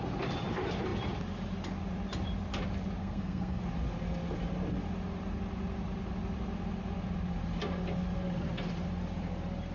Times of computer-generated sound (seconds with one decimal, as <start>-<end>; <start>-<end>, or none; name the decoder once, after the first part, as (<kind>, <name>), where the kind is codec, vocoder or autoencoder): 3.0-3.6 (codec, SNAC)